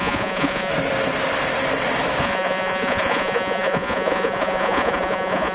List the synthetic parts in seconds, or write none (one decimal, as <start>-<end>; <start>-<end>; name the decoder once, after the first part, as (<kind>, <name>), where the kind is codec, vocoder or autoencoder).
0.0-0.7 (vocoder, Vocos); 2.2-5.5